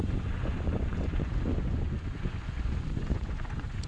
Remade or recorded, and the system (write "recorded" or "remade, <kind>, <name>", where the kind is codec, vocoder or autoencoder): remade, vocoder, Vocos